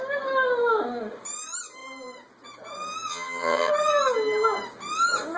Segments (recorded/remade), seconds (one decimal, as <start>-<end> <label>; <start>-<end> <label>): 0.0-3.1 recorded; 3.1-3.7 remade; 3.7-5.4 recorded